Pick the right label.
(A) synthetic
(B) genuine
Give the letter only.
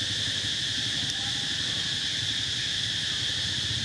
B